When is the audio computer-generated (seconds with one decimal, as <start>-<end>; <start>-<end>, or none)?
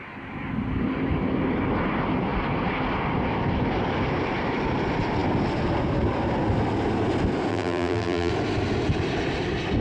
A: 7.5-8.3